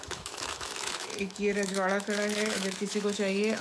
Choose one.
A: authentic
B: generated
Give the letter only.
B